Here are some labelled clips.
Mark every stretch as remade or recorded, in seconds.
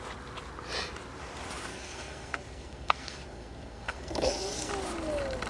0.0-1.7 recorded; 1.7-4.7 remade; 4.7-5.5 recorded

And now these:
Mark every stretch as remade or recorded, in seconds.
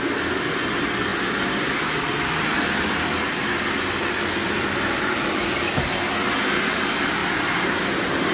0.0-1.1 recorded; 1.1-5.8 remade; 5.8-7.2 recorded; 7.2-7.9 remade; 7.9-8.3 recorded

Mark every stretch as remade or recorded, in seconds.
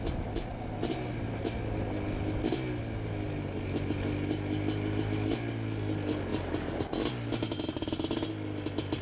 0.0-9.0 recorded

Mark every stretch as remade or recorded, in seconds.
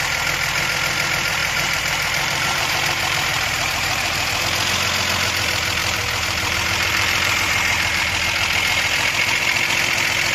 0.0-1.4 recorded; 1.4-4.4 remade; 4.4-5.8 recorded; 5.8-8.0 remade; 8.0-10.3 recorded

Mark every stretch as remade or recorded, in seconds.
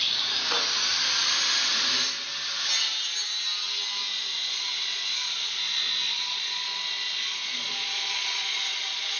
0.0-4.1 recorded; 4.1-9.2 remade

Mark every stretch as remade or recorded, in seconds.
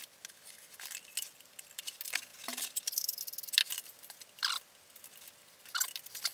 0.0-6.3 recorded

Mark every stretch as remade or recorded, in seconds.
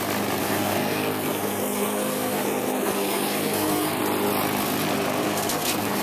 0.0-0.4 recorded; 0.4-4.0 remade; 4.0-5.2 recorded; 5.2-6.0 remade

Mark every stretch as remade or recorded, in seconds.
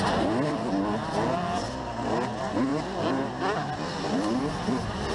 0.0-5.1 recorded